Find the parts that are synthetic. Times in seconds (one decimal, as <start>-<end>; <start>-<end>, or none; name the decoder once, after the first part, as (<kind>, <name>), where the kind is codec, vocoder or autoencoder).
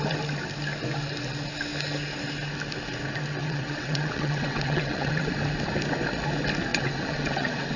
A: 3.4-5.3 (vocoder, WaveNeXt); 6.7-7.8